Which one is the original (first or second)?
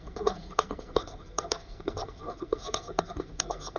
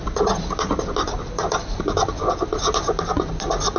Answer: second